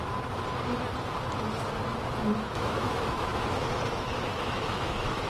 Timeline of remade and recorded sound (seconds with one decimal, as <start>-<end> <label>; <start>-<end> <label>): 0.0-2.4 recorded; 2.4-5.3 remade